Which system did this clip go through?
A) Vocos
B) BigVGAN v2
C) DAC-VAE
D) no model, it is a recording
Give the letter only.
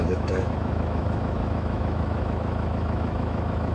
C